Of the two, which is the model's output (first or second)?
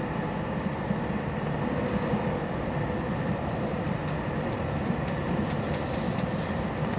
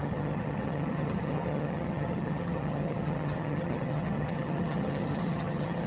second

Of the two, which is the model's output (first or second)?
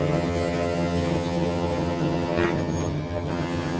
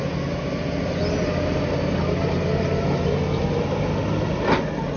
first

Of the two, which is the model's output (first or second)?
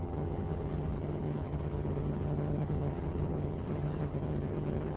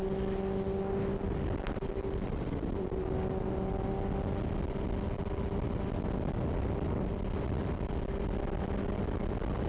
first